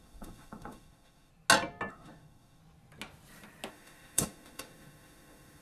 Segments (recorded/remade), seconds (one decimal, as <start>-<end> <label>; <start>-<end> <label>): 0.0-1.3 remade; 1.3-1.9 recorded; 1.9-2.6 remade; 2.6-3.7 recorded; 3.7-5.6 remade